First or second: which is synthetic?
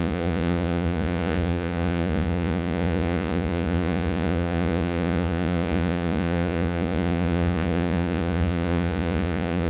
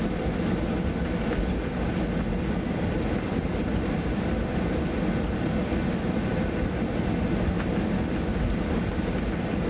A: first